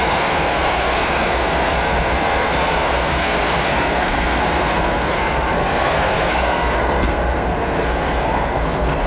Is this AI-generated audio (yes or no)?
yes